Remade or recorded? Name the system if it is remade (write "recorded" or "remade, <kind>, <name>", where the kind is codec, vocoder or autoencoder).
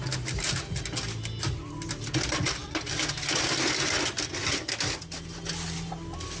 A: recorded